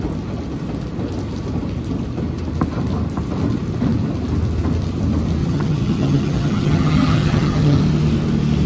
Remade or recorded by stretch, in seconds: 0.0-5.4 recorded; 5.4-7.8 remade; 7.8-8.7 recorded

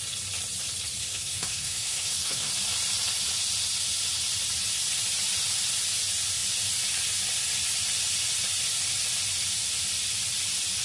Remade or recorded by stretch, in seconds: 0.0-1.0 recorded; 1.0-2.5 remade; 2.5-10.8 recorded

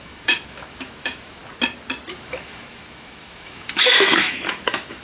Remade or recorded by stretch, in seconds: 0.0-1.4 remade; 1.4-2.1 recorded; 2.1-5.0 remade